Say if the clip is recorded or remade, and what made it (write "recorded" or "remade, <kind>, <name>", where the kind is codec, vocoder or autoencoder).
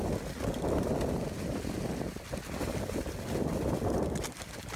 recorded